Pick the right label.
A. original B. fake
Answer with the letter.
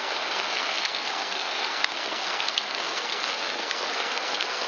B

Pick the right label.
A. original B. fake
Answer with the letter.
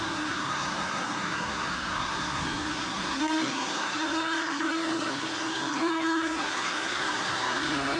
B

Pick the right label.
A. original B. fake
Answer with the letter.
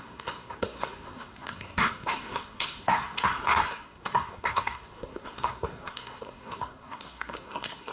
B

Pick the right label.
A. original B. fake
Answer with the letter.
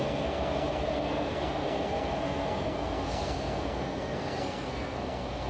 B